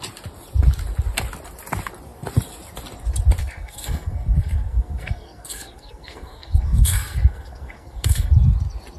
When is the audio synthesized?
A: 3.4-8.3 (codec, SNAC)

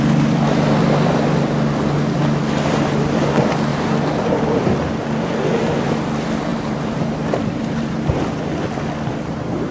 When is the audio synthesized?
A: 3.7-4.9 (vocoder, BigVGAN v2); 6.5-8.2

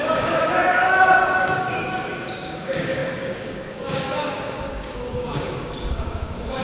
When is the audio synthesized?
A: 0.0-6.6 (codec, DAC)

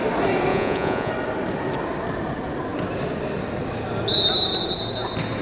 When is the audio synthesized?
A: 0.5-1.1 (vocoder, Vocos)

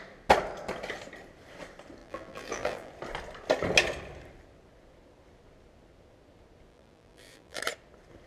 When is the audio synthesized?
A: 2.0-2.9 (vocoder, BigVGAN v2); 6.7-7.6

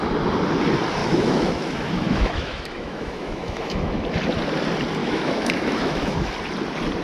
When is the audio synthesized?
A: 1.0-4.0 (autoencoder, DAC-VAE); 5.0-6.3